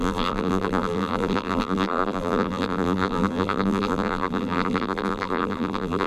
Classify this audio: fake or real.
fake